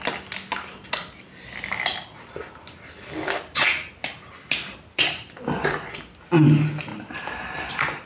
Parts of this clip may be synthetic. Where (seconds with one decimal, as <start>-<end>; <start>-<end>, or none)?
none